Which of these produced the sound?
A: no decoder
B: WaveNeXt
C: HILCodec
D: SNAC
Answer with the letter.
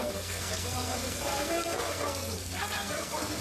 D